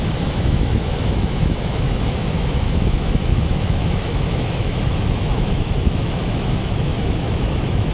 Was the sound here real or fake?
fake